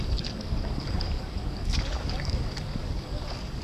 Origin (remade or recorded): remade